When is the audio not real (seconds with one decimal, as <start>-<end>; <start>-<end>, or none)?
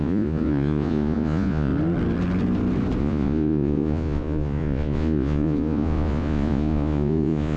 0.0-1.7; 3.0-7.6